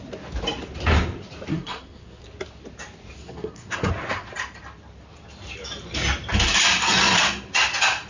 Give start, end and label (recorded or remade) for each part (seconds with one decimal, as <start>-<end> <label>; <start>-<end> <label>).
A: 0.0-1.5 recorded; 1.5-2.2 remade; 2.2-3.2 recorded; 3.2-3.9 remade; 3.9-8.1 recorded